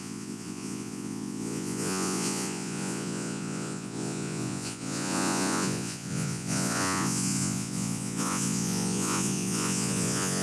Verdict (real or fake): fake